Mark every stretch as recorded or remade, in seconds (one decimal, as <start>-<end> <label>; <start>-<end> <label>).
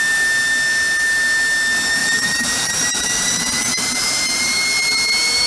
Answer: 0.0-2.0 recorded; 2.0-5.5 remade